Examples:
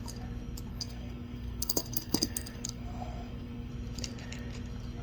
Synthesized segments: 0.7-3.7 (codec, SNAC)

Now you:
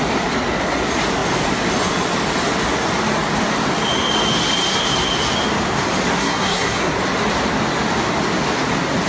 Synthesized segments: 6.2-6.9 (codec, SNAC)

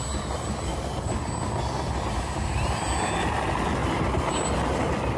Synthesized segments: 0.7-1.2 (vocoder, BigVGAN v2); 3.8-4.3